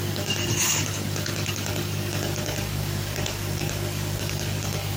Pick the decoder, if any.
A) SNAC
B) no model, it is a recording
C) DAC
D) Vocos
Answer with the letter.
C